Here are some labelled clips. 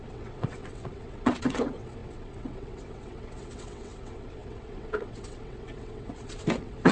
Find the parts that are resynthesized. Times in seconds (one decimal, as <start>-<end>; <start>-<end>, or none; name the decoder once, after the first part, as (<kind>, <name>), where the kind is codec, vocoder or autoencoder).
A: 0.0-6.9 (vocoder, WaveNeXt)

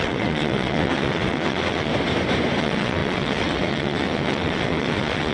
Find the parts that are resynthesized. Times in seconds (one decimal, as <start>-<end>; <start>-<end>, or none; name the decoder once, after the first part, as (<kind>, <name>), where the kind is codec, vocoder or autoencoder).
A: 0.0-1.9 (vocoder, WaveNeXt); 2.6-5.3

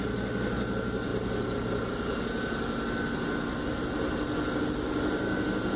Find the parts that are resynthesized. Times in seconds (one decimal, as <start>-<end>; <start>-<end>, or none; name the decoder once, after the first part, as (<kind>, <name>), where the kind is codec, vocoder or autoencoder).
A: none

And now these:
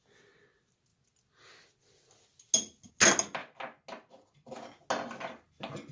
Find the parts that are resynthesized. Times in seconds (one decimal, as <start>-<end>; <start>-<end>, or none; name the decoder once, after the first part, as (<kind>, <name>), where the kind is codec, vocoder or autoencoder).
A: none

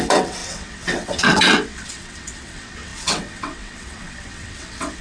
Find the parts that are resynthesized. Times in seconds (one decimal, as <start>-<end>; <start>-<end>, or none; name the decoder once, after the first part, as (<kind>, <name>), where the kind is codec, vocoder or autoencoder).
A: 0.0-5.0 (vocoder, WaveNeXt)